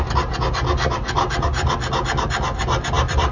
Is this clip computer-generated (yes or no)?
no